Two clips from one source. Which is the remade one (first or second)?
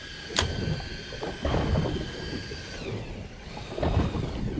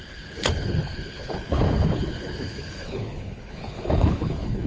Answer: second